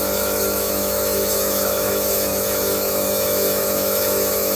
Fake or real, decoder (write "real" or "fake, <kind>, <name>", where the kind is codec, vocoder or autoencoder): fake, autoencoder, DAC-VAE